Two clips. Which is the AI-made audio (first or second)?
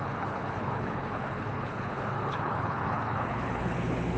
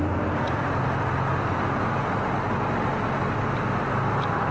first